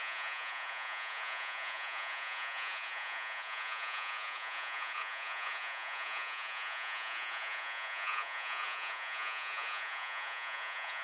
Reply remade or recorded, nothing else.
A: remade